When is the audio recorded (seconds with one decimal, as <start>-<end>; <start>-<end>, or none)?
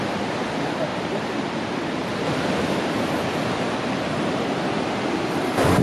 0.0-0.9; 4.4-5.8